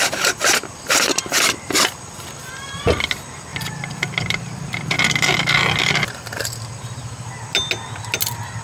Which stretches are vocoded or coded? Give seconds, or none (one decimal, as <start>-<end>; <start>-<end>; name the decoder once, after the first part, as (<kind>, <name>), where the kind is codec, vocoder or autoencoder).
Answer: 3.5-4.8 (vocoder, BigVGAN v2)